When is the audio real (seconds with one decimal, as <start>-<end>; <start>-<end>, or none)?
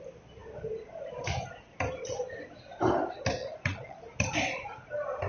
0.0-3.4; 4.0-5.3